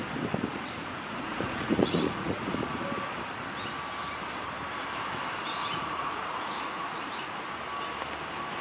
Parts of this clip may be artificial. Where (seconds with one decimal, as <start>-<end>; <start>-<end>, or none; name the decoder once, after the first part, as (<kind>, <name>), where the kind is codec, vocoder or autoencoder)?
0.5-2.8 (vocoder, Vocos); 5.6-7.4